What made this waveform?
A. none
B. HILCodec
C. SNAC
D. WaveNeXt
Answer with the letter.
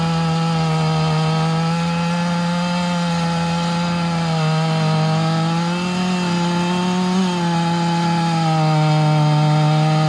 A